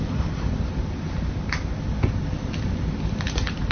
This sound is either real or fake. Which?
real